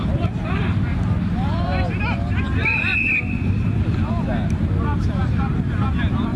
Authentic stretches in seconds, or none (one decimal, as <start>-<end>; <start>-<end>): 2.9-3.5; 5.2-6.4